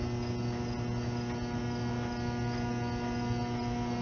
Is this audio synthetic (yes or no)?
no